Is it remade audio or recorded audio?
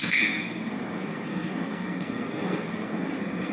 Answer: remade